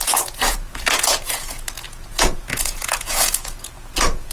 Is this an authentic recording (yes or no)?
no